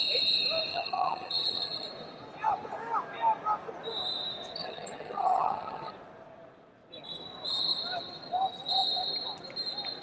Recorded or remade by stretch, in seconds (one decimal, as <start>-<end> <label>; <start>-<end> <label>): 0.0-0.7 recorded; 0.7-1.9 remade; 1.9-4.6 recorded; 4.6-5.9 remade; 5.9-10.0 recorded